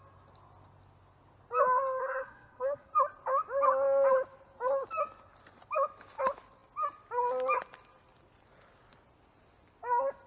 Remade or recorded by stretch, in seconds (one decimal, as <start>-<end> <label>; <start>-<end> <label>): 0.0-2.0 recorded; 2.0-2.9 remade; 2.9-10.3 recorded